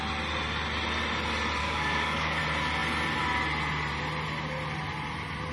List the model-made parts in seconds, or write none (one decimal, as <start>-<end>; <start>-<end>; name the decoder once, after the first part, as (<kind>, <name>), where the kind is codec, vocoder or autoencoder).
1.6-2.4 (codec, DAC)